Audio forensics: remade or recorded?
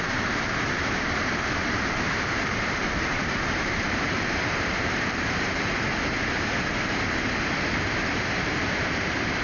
remade